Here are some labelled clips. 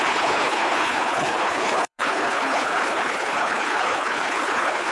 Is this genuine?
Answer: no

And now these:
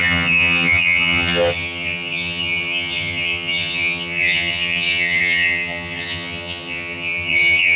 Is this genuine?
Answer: no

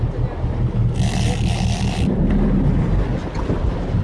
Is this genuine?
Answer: yes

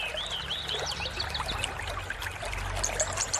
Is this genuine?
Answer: yes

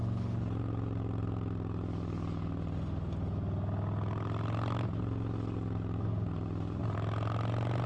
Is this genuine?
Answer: yes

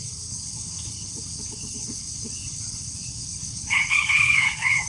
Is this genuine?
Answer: no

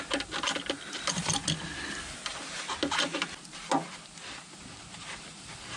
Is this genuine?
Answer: yes